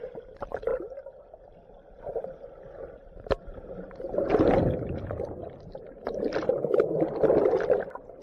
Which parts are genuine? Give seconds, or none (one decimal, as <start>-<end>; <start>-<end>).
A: 0.0-3.0; 4.3-8.2